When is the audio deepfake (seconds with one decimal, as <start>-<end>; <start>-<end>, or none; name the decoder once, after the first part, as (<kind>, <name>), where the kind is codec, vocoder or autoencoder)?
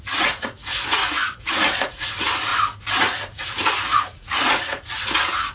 0.0-2.5 (vocoder, Vocos); 3.0-5.5